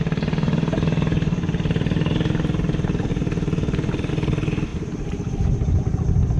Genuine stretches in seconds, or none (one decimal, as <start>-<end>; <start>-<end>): 0.0-3.1; 4.1-4.7; 5.8-6.4